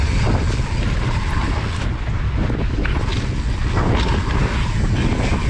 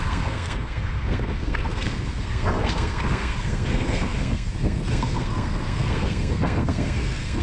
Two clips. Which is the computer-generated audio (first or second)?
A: second